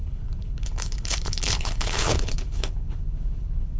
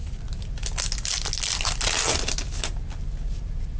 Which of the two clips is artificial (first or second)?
first